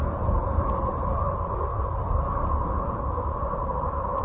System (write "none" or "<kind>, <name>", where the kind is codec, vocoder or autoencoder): none